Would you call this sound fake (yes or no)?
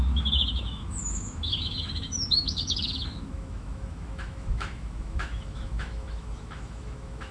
yes